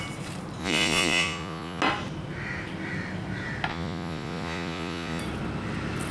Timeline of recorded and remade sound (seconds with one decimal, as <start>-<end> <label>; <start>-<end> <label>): 0.0-0.6 recorded; 0.6-1.8 remade; 1.8-3.7 recorded; 3.7-5.2 remade; 5.2-6.1 recorded